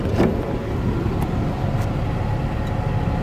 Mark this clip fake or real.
real